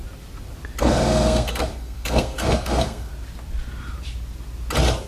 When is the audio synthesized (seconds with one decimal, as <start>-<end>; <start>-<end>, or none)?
0.8-3.1